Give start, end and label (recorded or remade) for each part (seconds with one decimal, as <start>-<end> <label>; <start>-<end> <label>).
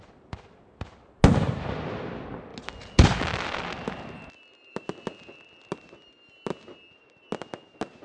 0.0-8.0 recorded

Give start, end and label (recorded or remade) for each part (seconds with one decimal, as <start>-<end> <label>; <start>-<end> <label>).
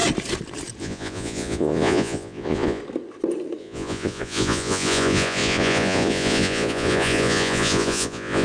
0.0-0.8 recorded; 0.8-2.8 remade; 2.8-3.6 recorded; 3.6-8.4 remade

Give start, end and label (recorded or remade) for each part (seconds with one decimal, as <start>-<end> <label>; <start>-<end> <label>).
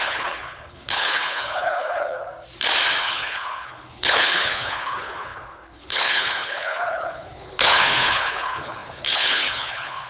0.0-2.3 remade; 2.3-3.0 recorded; 3.0-10.1 remade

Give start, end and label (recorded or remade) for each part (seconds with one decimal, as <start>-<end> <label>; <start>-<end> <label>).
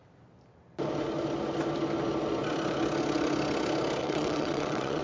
0.0-4.0 recorded; 4.0-5.0 remade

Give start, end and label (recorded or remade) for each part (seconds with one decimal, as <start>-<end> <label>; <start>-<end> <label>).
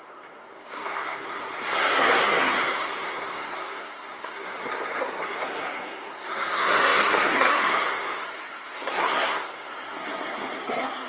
0.0-11.1 remade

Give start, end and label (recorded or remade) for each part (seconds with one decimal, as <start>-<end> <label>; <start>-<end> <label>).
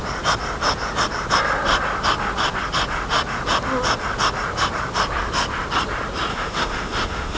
0.0-6.3 recorded; 6.3-7.4 remade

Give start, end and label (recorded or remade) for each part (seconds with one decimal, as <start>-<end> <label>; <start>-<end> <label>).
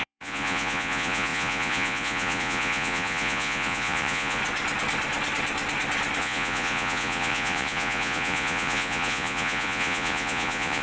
0.0-4.4 remade; 4.4-6.2 recorded; 6.2-10.8 remade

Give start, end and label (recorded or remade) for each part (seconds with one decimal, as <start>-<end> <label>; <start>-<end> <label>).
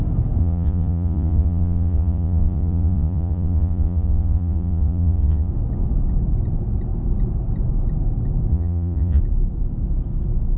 0.0-0.4 recorded; 0.4-5.5 remade; 5.5-8.5 recorded; 8.5-9.2 remade; 9.2-10.6 recorded